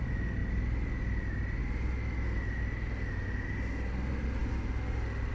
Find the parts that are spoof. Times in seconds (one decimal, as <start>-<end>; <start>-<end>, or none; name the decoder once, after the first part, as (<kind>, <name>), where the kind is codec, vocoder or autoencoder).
none